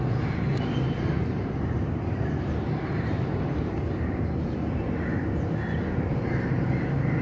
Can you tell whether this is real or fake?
fake